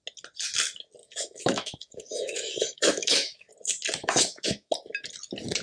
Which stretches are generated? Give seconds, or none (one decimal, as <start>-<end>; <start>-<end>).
1.0-3.5; 4.0-4.7